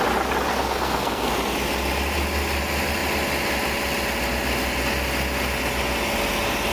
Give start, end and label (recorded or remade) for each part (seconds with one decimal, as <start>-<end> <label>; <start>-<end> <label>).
0.0-0.5 recorded; 0.5-1.3 remade; 1.3-6.7 recorded